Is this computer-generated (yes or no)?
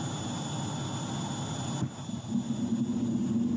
no